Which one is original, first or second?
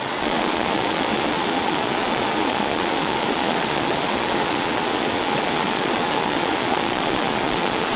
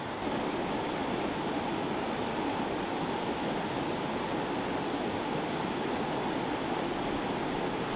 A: second